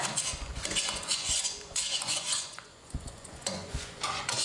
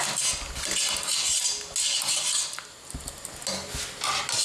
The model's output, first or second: first